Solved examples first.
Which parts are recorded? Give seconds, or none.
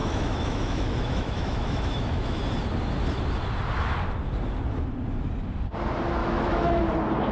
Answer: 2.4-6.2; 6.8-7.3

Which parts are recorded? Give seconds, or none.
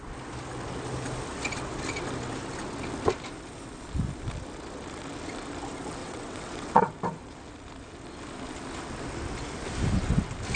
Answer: 0.0-6.0; 6.9-10.6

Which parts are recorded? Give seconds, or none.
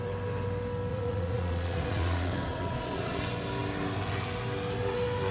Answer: 0.0-0.9; 3.2-5.3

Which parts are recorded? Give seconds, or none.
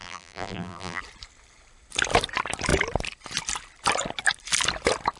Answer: 1.0-5.2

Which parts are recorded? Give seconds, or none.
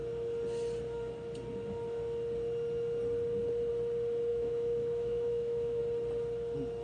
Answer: 0.0-4.3; 5.8-6.8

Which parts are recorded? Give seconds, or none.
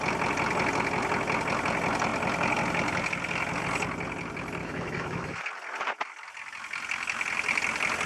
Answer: 0.0-4.6; 5.4-8.1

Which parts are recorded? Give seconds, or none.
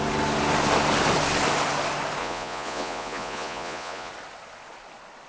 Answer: 0.0-2.2; 4.1-5.3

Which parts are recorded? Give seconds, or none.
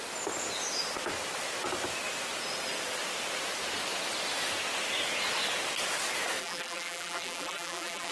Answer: 0.0-6.4